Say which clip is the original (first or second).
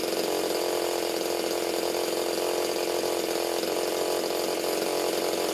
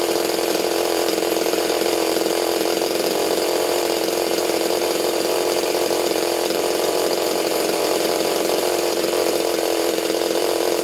first